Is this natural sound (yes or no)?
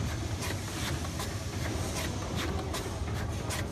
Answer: yes